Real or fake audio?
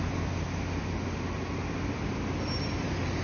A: real